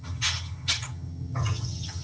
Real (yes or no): no